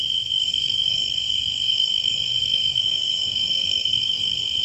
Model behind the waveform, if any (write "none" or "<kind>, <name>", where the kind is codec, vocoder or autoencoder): codec, SNAC